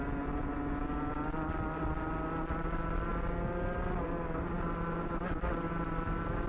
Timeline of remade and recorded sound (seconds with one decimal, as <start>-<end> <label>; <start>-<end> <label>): 0.0-6.5 recorded